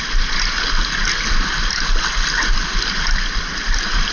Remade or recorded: recorded